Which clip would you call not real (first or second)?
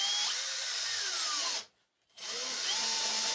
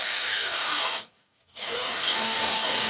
second